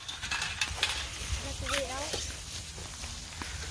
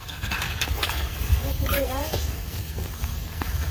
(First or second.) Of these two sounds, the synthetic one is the second